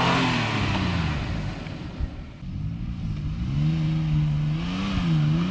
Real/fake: real